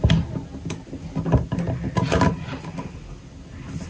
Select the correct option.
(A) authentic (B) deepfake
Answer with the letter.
A